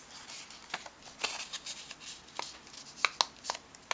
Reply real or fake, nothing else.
real